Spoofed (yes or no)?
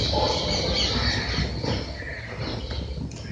no